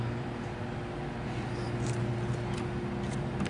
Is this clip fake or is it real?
real